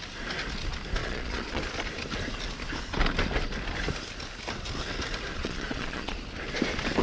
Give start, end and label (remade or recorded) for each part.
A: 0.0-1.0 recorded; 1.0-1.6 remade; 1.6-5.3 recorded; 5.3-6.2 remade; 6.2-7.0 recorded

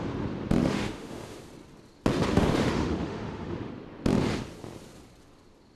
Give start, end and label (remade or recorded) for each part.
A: 0.0-0.6 recorded; 0.6-1.4 remade; 1.4-2.3 recorded; 2.3-3.7 remade; 3.7-5.8 recorded

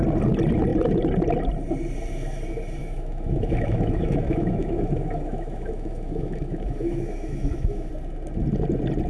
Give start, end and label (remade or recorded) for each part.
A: 0.0-2.8 recorded; 2.8-7.9 remade; 7.9-9.1 recorded